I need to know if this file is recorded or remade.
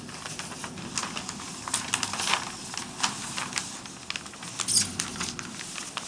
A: recorded